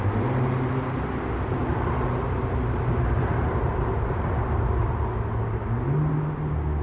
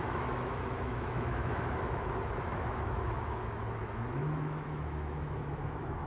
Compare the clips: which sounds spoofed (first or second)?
second